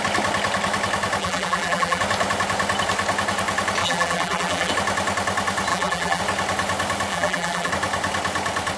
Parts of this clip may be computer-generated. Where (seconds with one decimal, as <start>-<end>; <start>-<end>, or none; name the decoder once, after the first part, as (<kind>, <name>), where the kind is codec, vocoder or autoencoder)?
1.2-2.0 (vocoder, BigVGAN v2); 3.8-4.7; 5.7-6.2; 7.1-7.7